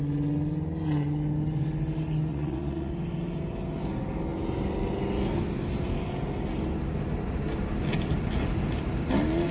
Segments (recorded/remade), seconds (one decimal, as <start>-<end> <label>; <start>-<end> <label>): 0.0-2.3 recorded; 2.3-2.9 remade; 2.9-9.5 recorded